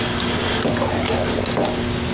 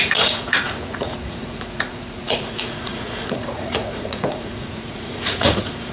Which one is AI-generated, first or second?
second